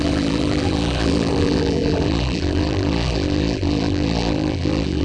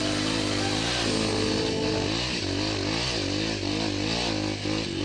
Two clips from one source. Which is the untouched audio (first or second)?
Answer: second